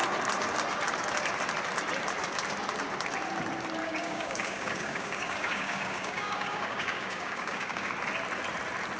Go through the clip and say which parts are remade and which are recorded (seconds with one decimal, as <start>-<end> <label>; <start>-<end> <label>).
0.0-3.8 recorded; 3.8-7.9 remade; 7.9-9.0 recorded